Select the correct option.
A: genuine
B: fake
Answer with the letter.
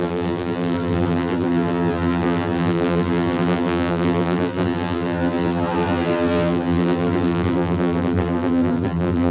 B